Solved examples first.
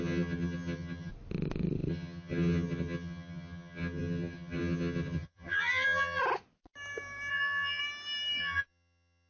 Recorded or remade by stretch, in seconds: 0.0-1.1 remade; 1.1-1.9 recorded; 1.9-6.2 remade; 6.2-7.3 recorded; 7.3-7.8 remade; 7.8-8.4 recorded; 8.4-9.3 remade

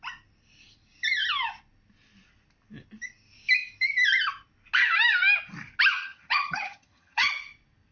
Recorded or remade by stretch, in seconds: 0.0-5.9 recorded; 5.9-7.3 remade; 7.3-7.9 recorded

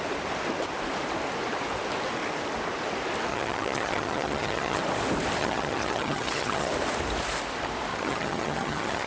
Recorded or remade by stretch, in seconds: 0.0-3.3 recorded; 3.3-4.8 remade; 4.8-5.4 recorded; 5.4-6.7 remade; 6.7-7.9 recorded; 7.9-9.1 remade

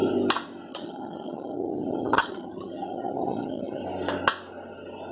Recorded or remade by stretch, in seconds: 0.0-0.7 recorded; 0.7-3.8 remade; 3.8-5.1 recorded

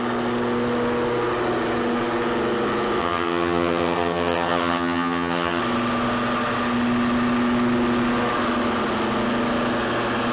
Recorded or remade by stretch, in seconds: 0.0-3.0 recorded; 3.0-5.6 remade; 5.6-10.3 recorded

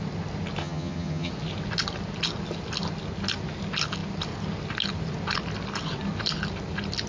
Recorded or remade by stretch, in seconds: 0.0-0.6 recorded; 0.6-1.3 remade; 1.3-7.1 recorded